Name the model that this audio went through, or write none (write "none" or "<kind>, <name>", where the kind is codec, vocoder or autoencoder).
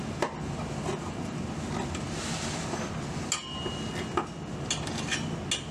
none